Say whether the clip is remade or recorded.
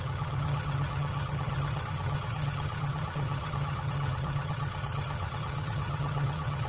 remade